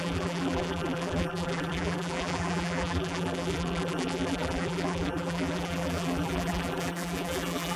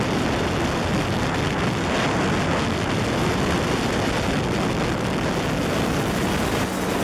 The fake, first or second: first